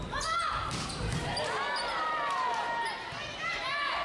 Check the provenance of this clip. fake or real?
real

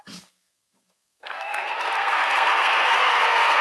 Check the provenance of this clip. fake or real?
fake